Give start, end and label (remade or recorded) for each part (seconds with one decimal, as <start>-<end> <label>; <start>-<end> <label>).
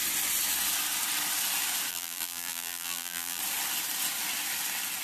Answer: 0.0-1.9 recorded; 1.9-3.4 remade; 3.4-5.0 recorded